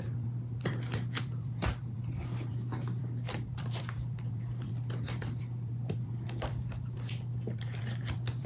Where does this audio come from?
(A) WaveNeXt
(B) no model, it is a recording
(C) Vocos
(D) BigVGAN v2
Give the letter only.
D